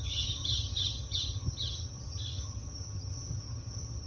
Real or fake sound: fake